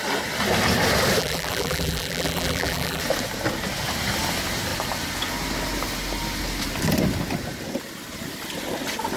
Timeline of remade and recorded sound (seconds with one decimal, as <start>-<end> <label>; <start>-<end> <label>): 0.0-1.2 recorded; 1.2-3.0 remade; 3.0-9.2 recorded